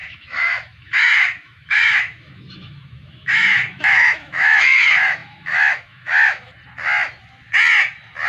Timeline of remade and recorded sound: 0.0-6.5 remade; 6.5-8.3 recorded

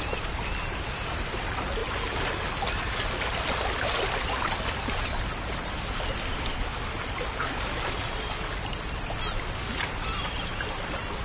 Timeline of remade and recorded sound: 0.0-11.2 recorded

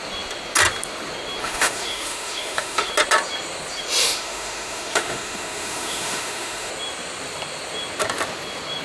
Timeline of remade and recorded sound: 0.0-1.4 recorded; 1.4-2.9 remade; 2.9-4.0 recorded; 4.0-6.7 remade; 6.7-8.8 recorded

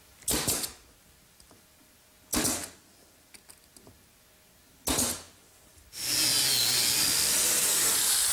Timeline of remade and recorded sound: 0.0-8.3 recorded

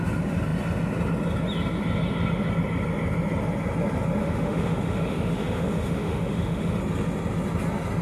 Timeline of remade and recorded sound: 0.0-4.2 recorded; 4.2-6.8 remade; 6.8-8.0 recorded